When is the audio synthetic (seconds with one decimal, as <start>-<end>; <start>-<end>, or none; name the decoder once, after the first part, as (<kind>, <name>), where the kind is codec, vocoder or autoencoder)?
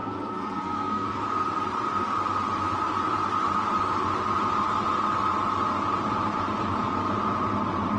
0.0-1.2 (codec, SNAC)